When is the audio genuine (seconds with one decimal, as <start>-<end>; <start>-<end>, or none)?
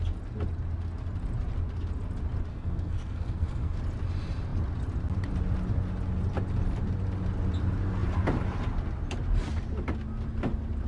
0.0-2.5; 3.8-10.9